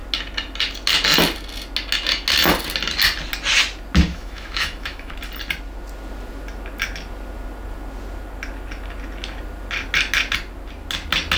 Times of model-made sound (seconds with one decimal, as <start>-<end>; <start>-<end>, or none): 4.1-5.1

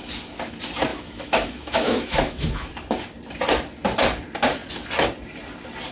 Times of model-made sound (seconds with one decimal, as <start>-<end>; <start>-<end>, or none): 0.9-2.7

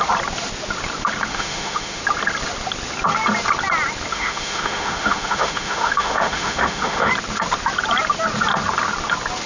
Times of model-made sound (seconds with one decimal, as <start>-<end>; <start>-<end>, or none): 1.3-2.0; 4.1-7.1